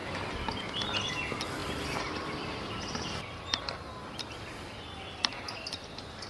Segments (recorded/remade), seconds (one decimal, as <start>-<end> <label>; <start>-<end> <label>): 0.0-6.3 recorded

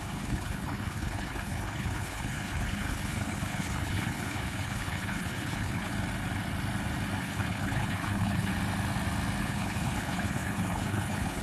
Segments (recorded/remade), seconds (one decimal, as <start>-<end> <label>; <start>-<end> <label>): 0.0-5.9 remade; 5.9-7.2 recorded; 7.2-8.5 remade; 8.5-9.4 recorded; 9.4-11.4 remade

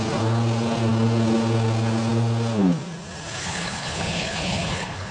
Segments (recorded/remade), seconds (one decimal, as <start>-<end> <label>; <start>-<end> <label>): 0.0-3.4 recorded; 3.4-5.1 remade